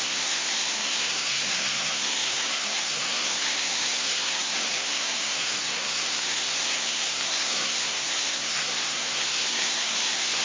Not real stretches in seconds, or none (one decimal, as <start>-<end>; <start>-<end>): 0.0-10.4

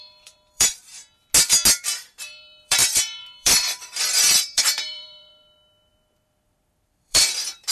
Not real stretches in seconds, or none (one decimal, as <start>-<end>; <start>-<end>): 0.0-1.0; 2.2-7.7

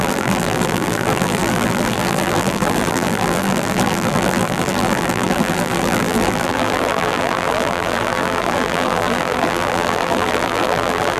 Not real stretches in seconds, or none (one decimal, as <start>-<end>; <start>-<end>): 0.0-11.2

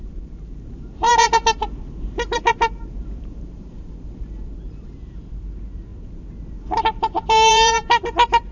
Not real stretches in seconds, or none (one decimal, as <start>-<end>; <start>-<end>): 0.0-1.1; 3.0-8.5

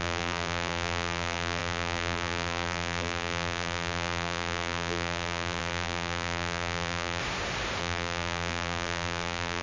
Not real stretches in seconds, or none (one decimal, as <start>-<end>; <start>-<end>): 0.0-7.2; 7.8-9.6

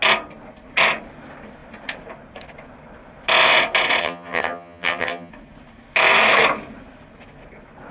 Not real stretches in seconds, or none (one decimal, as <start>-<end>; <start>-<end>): 4.0-5.3

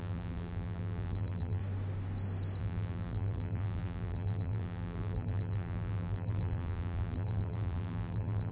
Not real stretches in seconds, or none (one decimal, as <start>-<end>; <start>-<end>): 0.0-1.6; 2.6-8.5

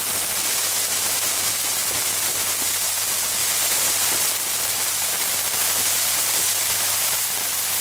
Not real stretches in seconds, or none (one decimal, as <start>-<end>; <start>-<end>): 3.4-4.3; 5.6-7.2